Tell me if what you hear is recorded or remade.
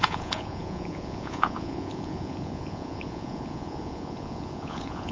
remade